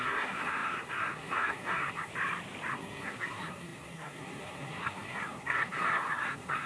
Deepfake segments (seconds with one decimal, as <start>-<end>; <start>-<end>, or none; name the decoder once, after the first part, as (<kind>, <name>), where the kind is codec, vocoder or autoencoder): 0.0-2.1 (codec, SNAC); 2.7-6.7